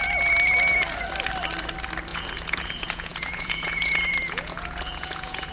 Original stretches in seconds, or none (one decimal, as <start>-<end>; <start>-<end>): 0.0-2.1